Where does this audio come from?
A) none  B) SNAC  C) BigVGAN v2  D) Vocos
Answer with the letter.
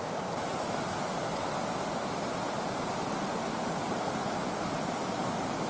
A